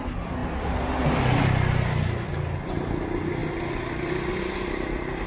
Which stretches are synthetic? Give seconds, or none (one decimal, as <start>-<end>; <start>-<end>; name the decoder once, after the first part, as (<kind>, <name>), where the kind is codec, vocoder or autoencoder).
none